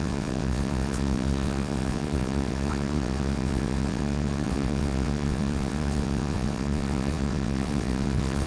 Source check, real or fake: fake